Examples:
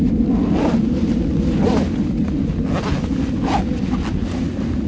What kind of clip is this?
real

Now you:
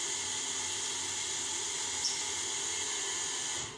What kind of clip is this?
real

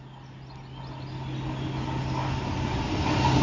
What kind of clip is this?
real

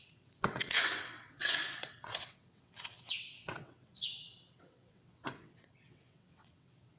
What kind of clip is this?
fake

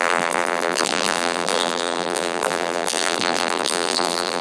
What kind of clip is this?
fake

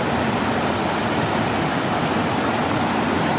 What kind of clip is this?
real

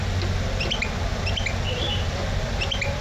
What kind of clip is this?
real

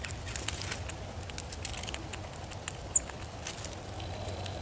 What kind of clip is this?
real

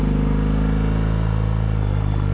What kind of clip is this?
real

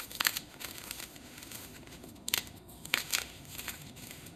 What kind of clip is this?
fake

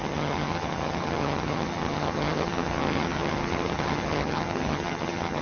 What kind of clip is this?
fake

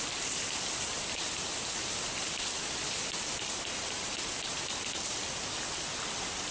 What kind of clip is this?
real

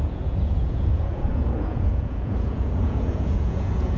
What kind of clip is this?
fake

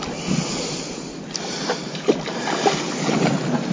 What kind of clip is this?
real